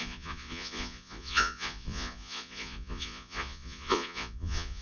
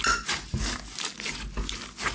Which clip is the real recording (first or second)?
second